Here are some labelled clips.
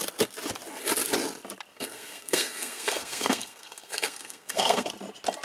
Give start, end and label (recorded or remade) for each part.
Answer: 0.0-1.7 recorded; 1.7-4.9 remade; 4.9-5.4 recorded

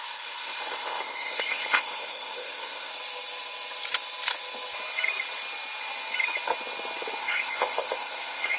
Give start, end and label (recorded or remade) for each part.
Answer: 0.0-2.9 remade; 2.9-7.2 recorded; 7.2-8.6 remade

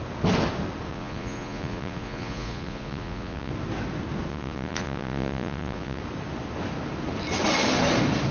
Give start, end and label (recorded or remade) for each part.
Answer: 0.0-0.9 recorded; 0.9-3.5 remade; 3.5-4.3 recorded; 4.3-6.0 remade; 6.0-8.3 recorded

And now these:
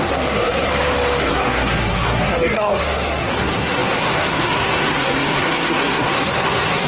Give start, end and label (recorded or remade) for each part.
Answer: 0.0-0.7 remade; 0.7-1.2 recorded; 1.2-6.9 remade

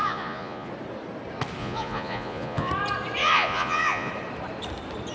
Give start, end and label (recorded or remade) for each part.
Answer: 0.0-0.7 remade; 0.7-1.6 recorded; 1.6-2.7 remade; 2.7-3.2 recorded; 3.2-4.1 remade; 4.1-5.1 recorded

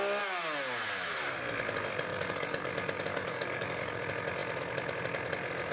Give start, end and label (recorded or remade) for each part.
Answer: 0.0-2.1 recorded; 2.1-2.7 remade; 2.7-3.1 recorded; 3.1-4.0 remade; 4.0-5.7 recorded